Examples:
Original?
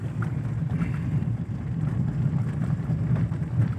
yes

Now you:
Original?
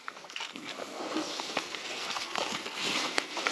no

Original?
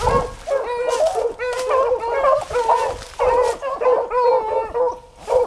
yes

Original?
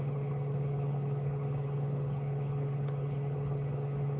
no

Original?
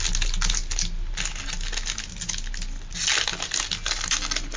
yes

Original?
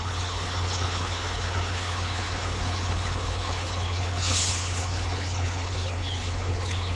no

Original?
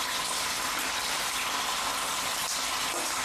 yes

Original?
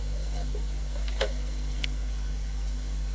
no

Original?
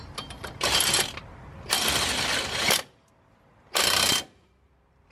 yes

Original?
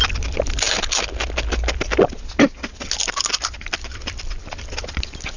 yes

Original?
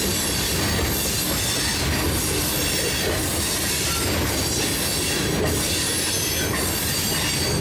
yes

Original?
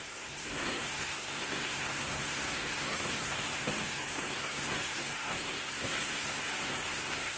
no